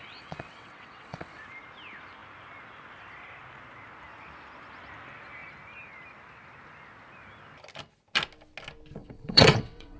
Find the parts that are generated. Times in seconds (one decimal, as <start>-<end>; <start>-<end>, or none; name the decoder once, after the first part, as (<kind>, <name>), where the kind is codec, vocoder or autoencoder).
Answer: 0.0-1.4 (vocoder, WaveNeXt); 9.0-10.0